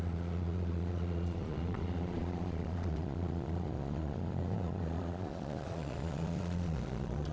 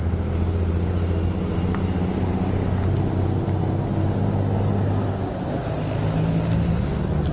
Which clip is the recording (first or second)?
second